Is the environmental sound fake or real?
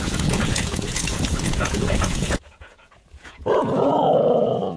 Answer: fake